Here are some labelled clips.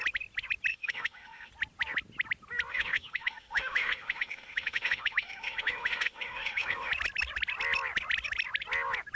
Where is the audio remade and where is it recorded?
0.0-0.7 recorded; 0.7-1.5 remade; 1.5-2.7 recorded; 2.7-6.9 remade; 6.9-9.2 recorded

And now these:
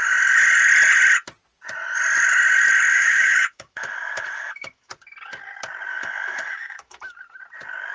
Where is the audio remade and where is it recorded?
0.0-2.9 recorded; 2.9-4.9 remade; 4.9-5.9 recorded; 5.9-7.1 remade; 7.1-7.9 recorded

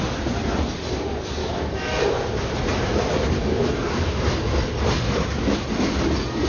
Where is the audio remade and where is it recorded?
0.0-1.4 recorded; 1.4-2.0 remade; 2.0-6.5 recorded

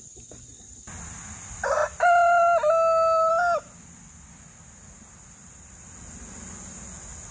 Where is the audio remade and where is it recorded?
0.0-7.3 recorded

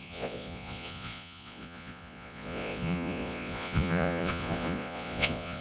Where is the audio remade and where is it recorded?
0.0-5.6 remade

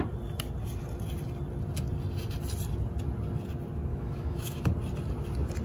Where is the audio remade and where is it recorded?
0.0-3.9 recorded; 3.9-4.6 remade; 4.6-5.6 recorded

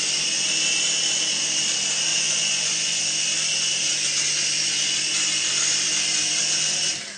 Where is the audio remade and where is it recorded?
0.0-2.1 recorded; 2.1-3.0 remade; 3.0-7.2 recorded

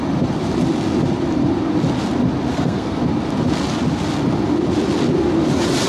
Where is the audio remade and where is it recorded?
0.0-2.5 recorded; 2.5-3.0 remade; 3.0-5.9 recorded